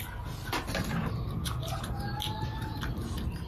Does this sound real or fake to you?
real